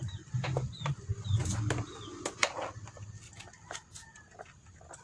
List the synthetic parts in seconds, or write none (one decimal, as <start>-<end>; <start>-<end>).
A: none